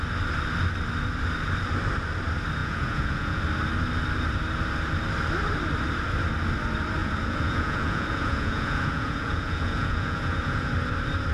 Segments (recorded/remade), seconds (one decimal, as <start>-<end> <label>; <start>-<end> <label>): 0.0-2.6 recorded; 2.6-3.4 remade; 3.4-7.0 recorded; 7.0-10.7 remade; 10.7-11.3 recorded